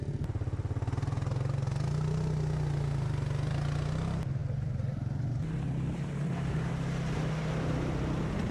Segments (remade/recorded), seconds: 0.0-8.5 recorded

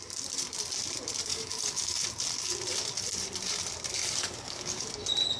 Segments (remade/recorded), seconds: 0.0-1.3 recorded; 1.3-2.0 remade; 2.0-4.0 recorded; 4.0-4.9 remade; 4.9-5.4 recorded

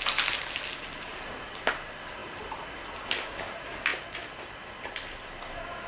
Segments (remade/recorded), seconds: 0.0-5.9 recorded

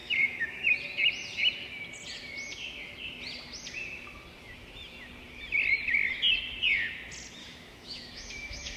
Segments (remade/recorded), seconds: 0.0-0.7 remade; 0.7-7.4 recorded; 7.4-8.8 remade

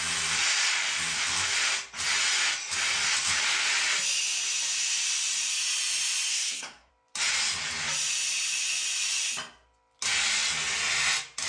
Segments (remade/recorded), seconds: 0.0-6.3 recorded; 6.3-6.9 remade; 6.9-11.5 recorded